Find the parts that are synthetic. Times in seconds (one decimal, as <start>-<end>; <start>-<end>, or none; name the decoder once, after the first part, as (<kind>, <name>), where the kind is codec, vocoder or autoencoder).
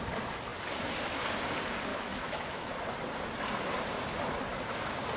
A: 1.9-2.7 (autoencoder, DAC-VAE)